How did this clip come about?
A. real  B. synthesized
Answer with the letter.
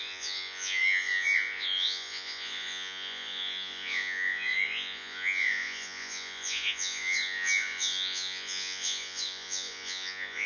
B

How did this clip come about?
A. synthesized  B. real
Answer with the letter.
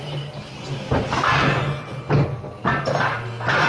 B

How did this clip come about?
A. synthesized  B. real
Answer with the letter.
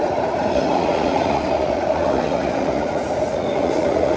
A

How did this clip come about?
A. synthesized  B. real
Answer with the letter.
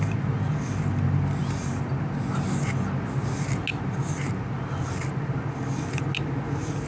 B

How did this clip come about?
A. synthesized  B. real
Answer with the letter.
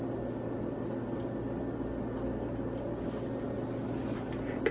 B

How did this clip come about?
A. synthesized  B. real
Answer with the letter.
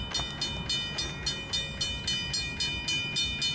B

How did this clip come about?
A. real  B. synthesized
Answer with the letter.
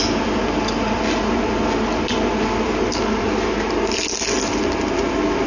A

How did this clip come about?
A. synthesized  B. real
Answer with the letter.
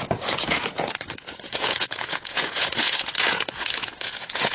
A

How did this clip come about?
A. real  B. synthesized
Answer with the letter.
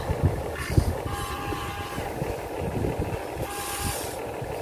A